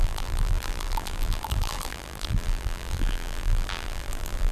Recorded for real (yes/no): no